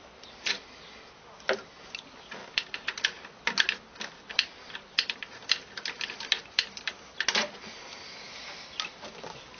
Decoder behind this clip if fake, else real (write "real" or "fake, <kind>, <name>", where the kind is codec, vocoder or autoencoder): real